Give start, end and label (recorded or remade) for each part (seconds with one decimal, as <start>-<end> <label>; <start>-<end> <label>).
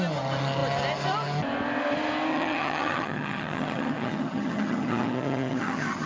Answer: 0.0-2.3 recorded; 2.3-6.1 remade